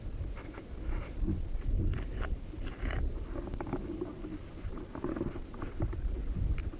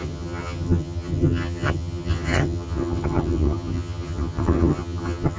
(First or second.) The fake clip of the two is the second